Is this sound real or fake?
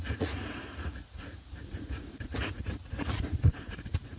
fake